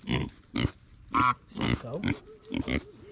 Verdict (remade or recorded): recorded